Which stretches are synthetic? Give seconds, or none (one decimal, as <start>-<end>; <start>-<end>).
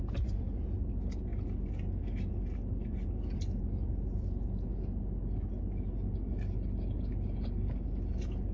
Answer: none